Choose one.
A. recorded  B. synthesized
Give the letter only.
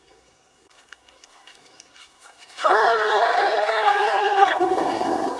B